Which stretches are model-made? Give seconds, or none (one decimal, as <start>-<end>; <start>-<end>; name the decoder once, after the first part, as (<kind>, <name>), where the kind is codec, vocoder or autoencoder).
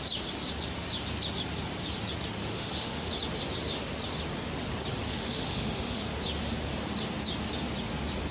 2.4-3.1 (autoencoder, DAC-VAE); 5.1-6.0